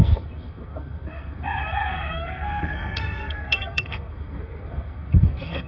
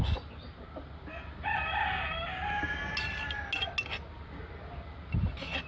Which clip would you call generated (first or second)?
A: first